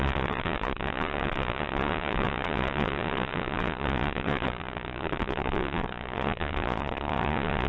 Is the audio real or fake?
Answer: fake